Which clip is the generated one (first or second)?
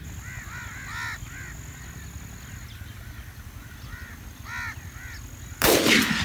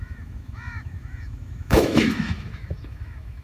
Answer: second